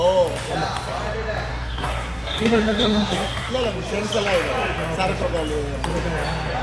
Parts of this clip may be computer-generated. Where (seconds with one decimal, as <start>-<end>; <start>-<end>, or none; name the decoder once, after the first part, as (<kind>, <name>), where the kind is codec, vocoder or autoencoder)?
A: 1.5-3.5 (codec, SNAC)